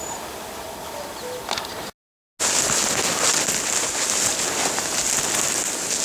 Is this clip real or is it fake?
real